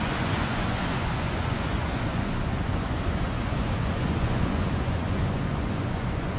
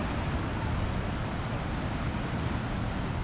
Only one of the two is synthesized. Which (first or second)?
first